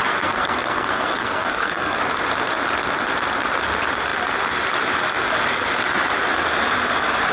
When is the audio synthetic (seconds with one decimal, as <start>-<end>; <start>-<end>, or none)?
0.0-2.0